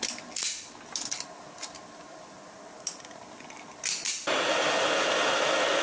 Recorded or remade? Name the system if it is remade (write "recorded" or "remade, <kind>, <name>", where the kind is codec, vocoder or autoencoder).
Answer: recorded